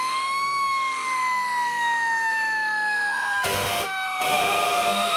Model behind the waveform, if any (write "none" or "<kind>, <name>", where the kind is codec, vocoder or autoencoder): autoencoder, DAC-VAE